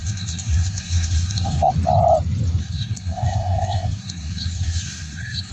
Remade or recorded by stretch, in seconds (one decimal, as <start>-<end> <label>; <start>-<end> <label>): 0.0-1.7 remade; 1.7-2.6 recorded; 2.6-5.5 remade